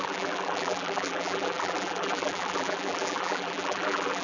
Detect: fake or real fake